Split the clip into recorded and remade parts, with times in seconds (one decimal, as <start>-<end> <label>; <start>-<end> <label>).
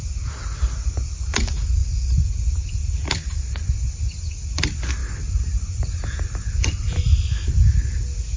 0.0-8.4 recorded